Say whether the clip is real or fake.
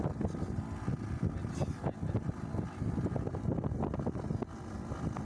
real